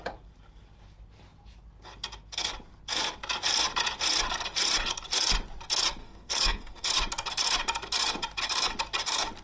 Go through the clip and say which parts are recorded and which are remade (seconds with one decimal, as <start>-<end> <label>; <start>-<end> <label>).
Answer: 0.0-6.0 recorded; 6.0-6.9 remade; 6.9-9.4 recorded